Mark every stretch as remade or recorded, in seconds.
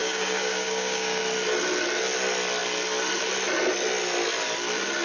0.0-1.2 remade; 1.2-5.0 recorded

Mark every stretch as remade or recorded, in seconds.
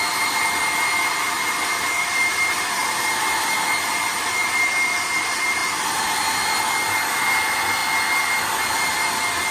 0.0-2.8 remade; 2.8-4.0 recorded; 4.0-5.6 remade; 5.6-6.9 recorded; 6.9-7.8 remade; 7.8-8.4 recorded; 8.4-9.5 remade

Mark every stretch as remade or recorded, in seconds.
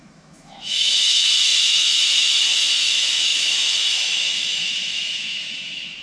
0.0-6.0 remade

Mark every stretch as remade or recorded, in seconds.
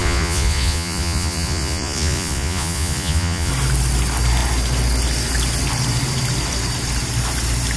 0.0-3.5 remade; 3.5-7.8 recorded